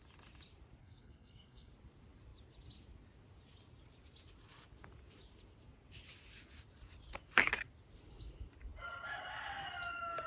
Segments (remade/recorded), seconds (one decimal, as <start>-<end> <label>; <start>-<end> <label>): 0.0-0.8 recorded; 0.8-1.7 remade; 1.7-10.3 recorded